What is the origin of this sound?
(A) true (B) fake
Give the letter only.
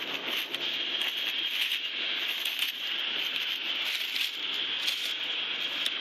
A